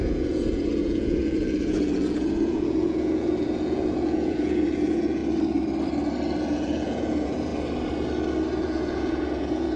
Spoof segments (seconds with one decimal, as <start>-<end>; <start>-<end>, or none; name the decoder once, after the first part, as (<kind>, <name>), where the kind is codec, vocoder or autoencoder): 0.0-5.2 (vocoder, Vocos); 6.4-7.5; 8.6-9.8